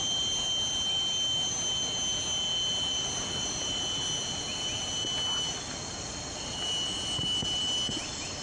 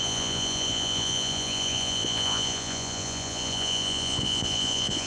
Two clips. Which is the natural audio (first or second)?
first